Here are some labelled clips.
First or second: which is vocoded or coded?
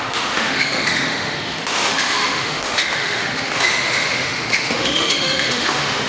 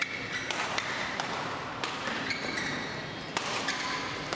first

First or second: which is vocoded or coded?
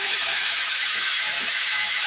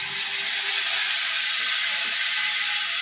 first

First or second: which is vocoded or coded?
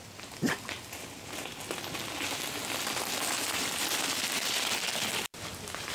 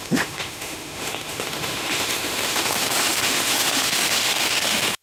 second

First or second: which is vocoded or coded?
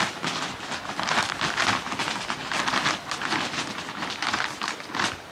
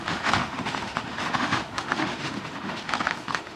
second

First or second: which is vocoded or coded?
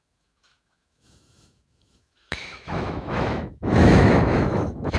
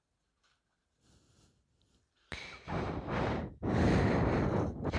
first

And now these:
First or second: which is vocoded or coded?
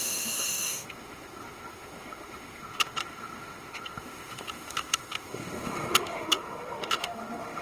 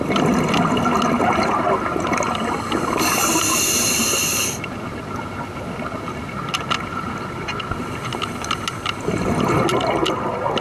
first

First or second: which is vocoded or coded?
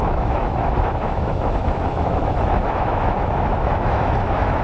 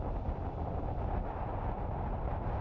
first